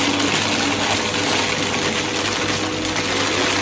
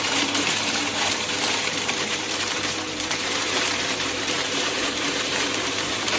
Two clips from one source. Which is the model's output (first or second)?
second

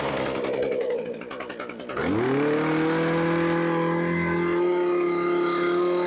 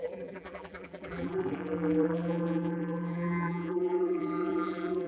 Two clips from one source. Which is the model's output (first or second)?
second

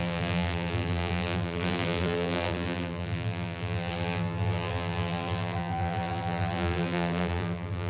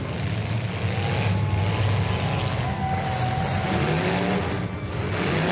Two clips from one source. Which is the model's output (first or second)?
first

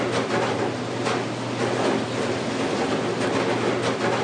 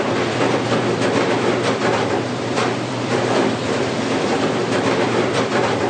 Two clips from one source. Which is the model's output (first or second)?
second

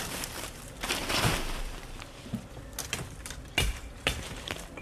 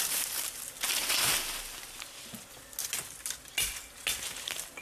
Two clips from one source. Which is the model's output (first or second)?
first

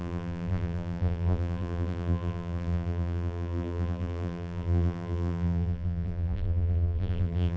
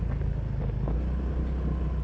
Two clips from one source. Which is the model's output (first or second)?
first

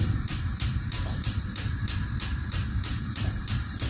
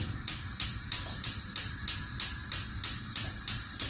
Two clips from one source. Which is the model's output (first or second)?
first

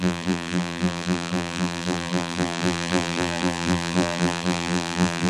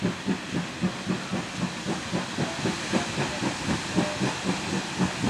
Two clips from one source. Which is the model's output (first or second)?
first